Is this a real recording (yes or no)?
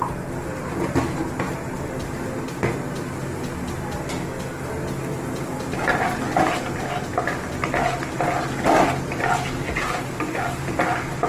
yes